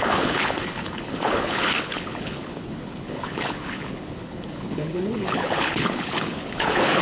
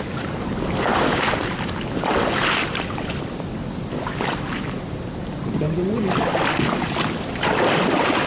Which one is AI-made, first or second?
first